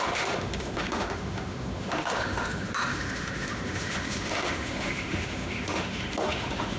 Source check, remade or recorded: remade